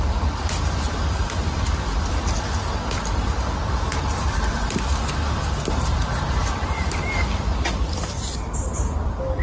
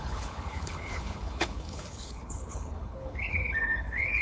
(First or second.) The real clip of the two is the first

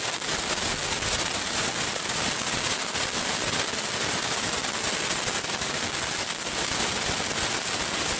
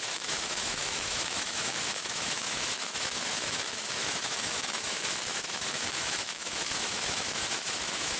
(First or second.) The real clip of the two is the first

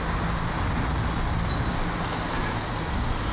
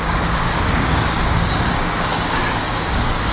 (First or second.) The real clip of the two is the first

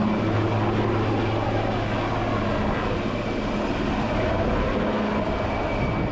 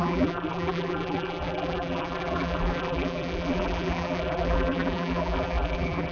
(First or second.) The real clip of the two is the first